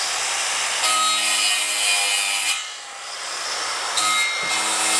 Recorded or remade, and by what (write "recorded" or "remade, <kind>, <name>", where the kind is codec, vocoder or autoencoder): recorded